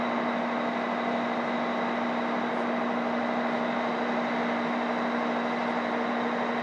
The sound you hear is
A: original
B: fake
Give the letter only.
A